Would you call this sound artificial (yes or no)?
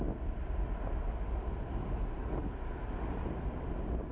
no